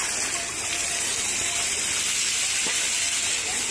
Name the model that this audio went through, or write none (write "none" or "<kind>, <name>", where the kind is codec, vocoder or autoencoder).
none